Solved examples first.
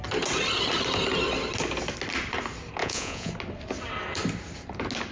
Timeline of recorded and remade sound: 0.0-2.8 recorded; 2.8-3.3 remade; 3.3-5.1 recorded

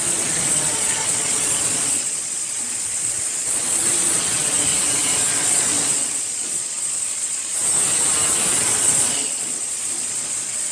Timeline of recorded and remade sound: 0.0-4.7 remade; 4.7-5.3 recorded; 5.3-7.6 remade; 7.6-8.6 recorded; 8.6-10.7 remade

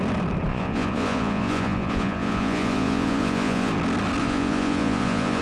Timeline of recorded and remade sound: 0.0-0.5 recorded; 0.5-3.7 remade; 3.7-4.2 recorded; 4.2-5.4 remade

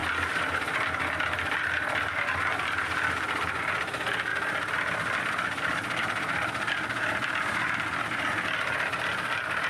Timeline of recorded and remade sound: 0.0-9.7 recorded